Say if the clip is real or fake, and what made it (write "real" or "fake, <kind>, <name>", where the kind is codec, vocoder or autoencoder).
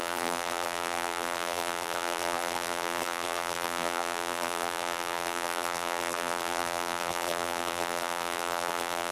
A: fake, vocoder, BigVGAN v2